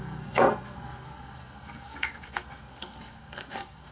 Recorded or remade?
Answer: remade